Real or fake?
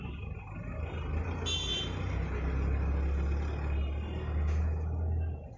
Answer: real